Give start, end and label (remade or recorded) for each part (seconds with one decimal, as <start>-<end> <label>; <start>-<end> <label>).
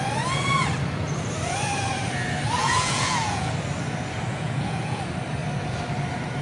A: 0.0-2.6 recorded; 2.6-3.5 remade; 3.5-4.3 recorded; 4.3-5.0 remade; 5.0-6.4 recorded